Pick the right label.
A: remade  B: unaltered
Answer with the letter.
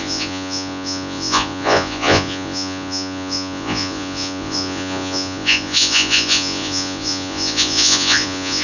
A